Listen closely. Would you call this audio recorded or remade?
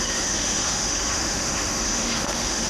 remade